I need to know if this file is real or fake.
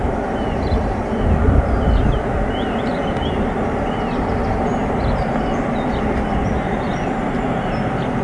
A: real